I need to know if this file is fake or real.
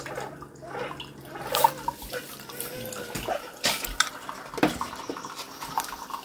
real